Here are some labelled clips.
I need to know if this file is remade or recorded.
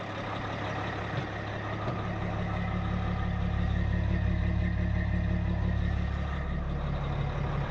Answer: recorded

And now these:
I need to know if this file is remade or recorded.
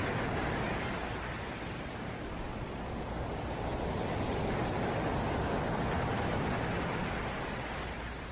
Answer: recorded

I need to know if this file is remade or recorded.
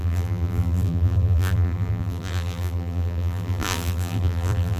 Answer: remade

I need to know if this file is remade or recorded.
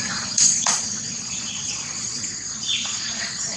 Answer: remade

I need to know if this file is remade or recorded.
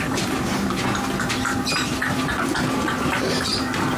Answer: remade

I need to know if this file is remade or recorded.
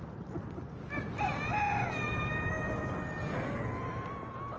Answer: recorded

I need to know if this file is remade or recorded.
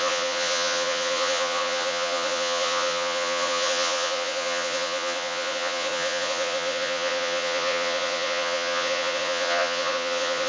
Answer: remade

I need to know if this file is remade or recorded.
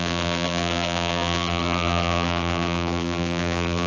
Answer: remade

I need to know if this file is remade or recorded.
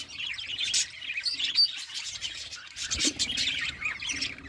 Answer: recorded